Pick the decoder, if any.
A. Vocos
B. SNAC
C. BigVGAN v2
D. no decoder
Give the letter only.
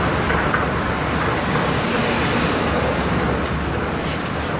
D